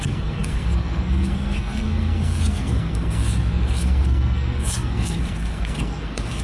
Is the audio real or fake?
fake